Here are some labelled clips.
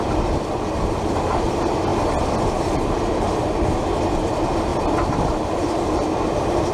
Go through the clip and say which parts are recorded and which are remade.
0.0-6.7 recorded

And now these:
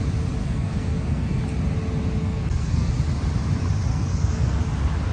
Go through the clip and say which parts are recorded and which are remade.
0.0-0.4 recorded; 0.4-1.4 remade; 1.4-2.2 recorded; 2.2-2.9 remade; 2.9-3.9 recorded; 3.9-4.6 remade; 4.6-5.1 recorded